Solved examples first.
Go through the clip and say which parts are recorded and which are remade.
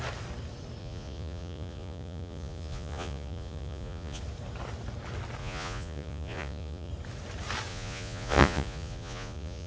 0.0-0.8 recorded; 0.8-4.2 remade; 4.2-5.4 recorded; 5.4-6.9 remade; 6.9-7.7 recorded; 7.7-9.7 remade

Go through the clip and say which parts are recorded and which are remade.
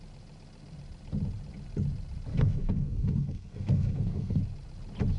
0.0-2.3 recorded; 2.3-4.4 remade; 4.4-5.2 recorded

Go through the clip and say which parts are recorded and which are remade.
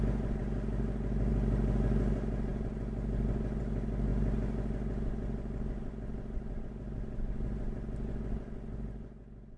0.0-9.6 recorded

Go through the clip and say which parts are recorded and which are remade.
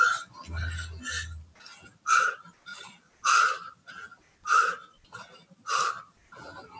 0.0-6.8 recorded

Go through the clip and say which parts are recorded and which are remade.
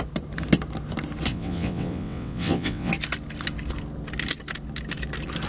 0.0-1.3 recorded; 1.3-2.9 remade; 2.9-5.5 recorded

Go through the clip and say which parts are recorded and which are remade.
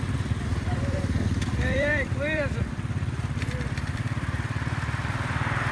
0.0-5.7 remade